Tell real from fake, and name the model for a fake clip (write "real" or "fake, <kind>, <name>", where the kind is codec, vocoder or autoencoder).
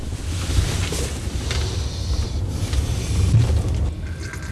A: real